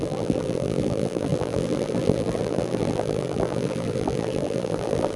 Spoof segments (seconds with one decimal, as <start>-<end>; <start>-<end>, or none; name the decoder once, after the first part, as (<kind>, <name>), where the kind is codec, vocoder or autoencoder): 0.0-5.2 (vocoder, BigVGAN v2)